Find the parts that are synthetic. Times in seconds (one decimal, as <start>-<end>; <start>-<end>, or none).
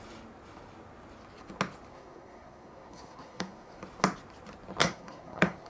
1.9-3.8; 4.8-5.7